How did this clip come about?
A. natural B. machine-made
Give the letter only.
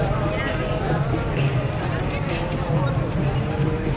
A